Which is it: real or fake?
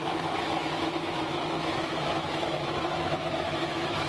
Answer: fake